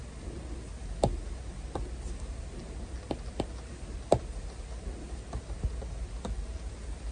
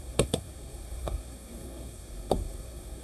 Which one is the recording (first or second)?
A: first